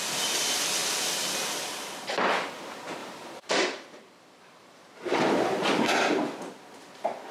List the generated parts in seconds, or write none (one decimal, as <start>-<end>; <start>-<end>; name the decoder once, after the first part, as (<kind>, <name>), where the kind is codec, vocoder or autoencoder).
3.0-5.3 (vocoder, BigVGAN v2)